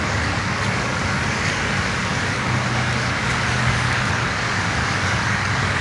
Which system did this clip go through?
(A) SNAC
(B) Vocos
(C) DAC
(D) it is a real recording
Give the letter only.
C